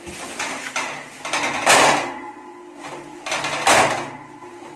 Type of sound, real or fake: real